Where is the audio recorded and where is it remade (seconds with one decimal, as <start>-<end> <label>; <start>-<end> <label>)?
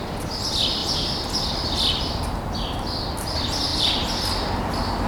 0.0-0.8 recorded; 0.8-2.0 remade; 2.0-3.7 recorded; 3.7-4.6 remade; 4.6-5.1 recorded